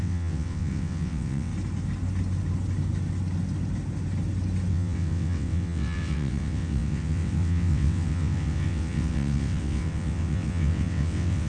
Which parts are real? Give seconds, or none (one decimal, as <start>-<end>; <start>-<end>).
1.5-4.7